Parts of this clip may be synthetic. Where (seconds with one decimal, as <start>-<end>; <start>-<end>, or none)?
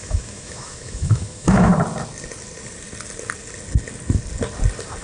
0.0-1.7